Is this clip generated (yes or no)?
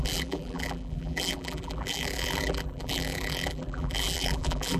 yes